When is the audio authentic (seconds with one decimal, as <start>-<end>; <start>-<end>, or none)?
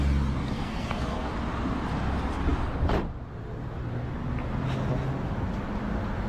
0.0-0.4; 1.3-6.3